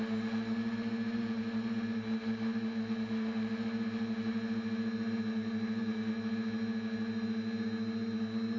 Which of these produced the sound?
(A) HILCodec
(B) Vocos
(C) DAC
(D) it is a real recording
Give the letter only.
D